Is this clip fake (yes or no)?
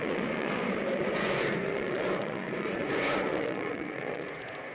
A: yes